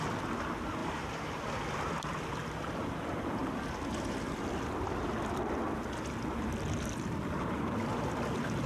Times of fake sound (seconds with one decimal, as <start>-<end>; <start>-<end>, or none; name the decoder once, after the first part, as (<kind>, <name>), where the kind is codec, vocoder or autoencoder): 0.8-1.5 (vocoder, BigVGAN v2)